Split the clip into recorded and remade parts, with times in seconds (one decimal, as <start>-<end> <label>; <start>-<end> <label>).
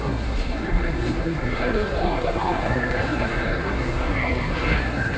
0.0-5.2 remade